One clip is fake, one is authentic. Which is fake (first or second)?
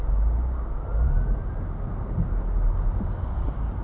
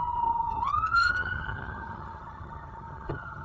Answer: second